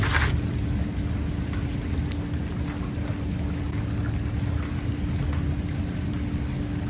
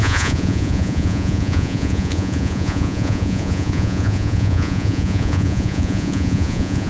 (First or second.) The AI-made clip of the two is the second